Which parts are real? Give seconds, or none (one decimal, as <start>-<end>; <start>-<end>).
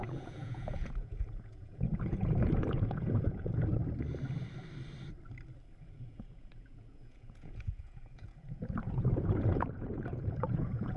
3.7-5.8